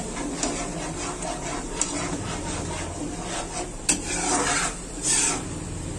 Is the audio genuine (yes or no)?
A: yes